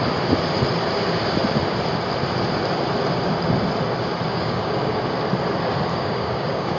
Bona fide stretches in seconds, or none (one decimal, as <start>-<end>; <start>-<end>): 0.0-4.3; 5.0-5.9